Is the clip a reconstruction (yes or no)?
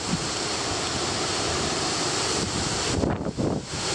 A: no